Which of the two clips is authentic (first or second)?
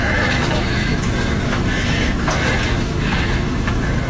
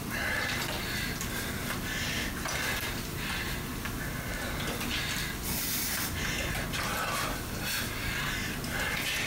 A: second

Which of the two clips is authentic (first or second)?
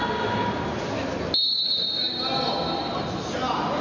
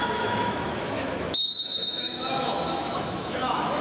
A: first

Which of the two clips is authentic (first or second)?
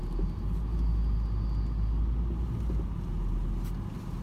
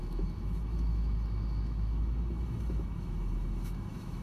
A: first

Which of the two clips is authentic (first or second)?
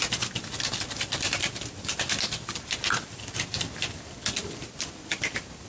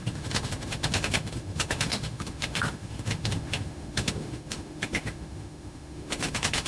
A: first